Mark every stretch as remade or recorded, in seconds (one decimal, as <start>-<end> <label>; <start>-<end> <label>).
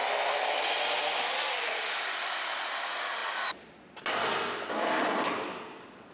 0.0-6.1 recorded